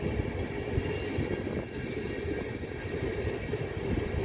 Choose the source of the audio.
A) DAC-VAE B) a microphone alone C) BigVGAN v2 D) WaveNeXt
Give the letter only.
B